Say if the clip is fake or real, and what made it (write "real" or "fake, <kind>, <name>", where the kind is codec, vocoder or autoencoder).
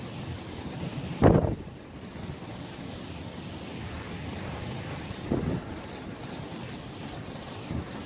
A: real